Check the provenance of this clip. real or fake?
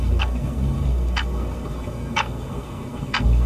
fake